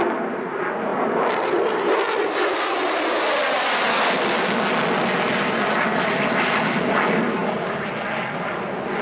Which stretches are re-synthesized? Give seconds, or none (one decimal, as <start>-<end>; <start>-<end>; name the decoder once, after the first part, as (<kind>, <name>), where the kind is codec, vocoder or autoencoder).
none